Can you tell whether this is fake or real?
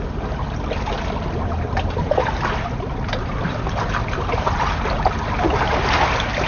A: real